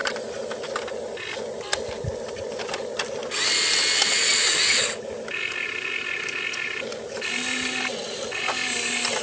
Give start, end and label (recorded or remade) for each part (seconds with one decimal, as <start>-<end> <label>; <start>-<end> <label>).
0.0-9.2 recorded

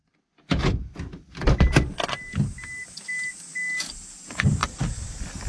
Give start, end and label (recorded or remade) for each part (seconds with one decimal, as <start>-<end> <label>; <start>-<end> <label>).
0.0-5.5 recorded